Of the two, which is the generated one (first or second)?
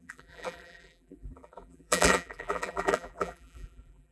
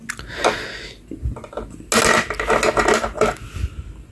first